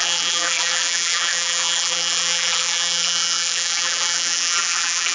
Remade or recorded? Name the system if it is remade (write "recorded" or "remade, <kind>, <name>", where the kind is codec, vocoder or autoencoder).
remade, vocoder, BigVGAN v2